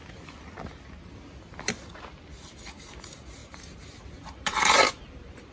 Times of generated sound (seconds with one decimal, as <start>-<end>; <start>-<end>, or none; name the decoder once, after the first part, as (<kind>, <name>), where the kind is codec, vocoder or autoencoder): 3.4-5.5 (vocoder, BigVGAN v2)